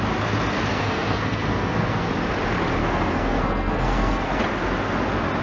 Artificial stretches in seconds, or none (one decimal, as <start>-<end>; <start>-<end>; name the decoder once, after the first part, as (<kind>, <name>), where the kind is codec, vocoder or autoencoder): 0.7-2.1 (codec, SNAC); 2.8-4.4